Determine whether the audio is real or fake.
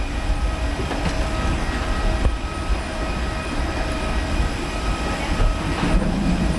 real